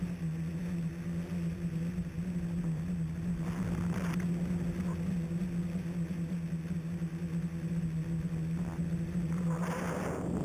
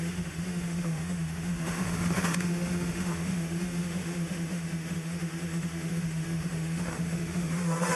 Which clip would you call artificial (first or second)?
second